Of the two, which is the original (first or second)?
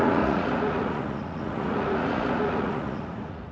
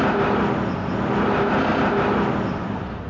second